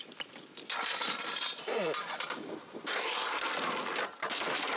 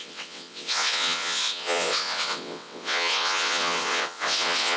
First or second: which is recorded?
first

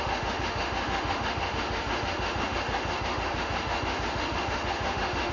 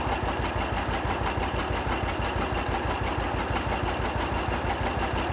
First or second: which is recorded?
second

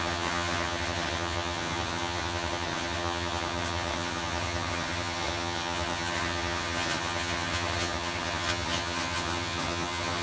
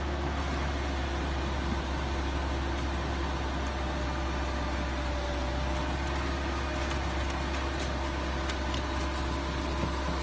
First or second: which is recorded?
second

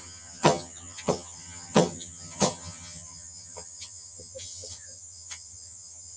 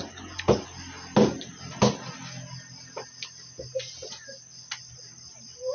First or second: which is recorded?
second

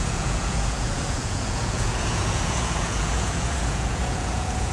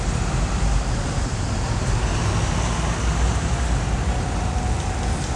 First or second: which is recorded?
second